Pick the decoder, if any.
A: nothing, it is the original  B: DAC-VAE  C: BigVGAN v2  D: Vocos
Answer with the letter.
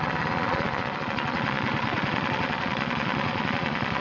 D